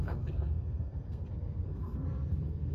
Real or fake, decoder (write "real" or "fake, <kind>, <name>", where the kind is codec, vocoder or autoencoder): fake, codec, SNAC